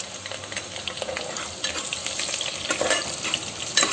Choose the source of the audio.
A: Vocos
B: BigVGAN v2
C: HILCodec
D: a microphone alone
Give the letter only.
D